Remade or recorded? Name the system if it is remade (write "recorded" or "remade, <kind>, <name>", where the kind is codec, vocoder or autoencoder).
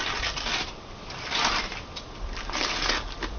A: recorded